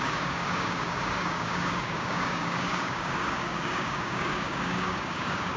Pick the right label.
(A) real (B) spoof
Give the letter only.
B